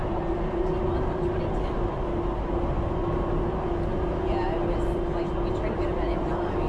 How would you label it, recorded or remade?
recorded